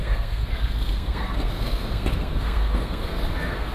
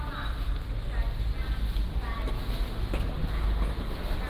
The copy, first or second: first